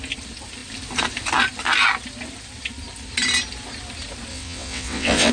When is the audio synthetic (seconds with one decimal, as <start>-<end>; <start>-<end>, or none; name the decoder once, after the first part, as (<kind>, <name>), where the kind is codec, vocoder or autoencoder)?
4.3-5.3 (vocoder, WaveNeXt)